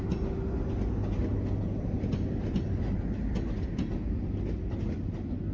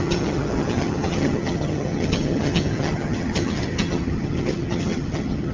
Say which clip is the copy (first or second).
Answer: second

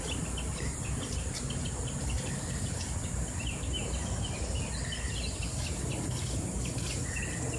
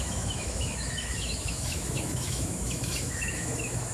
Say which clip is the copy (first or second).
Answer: second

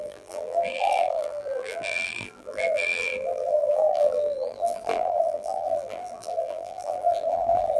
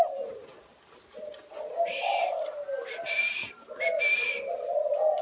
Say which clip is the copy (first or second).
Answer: first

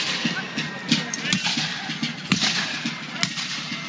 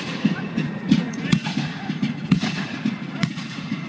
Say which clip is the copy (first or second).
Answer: second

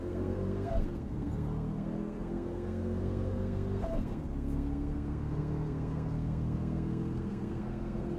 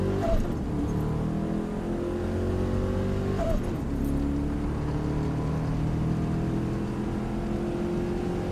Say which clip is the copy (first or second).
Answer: first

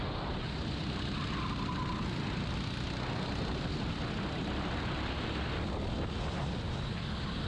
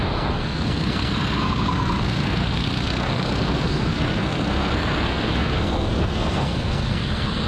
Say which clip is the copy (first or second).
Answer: second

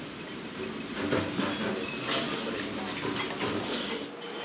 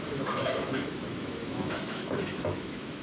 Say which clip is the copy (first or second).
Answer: second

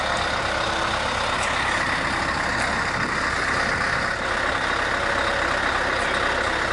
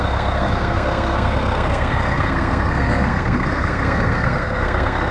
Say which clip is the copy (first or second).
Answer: second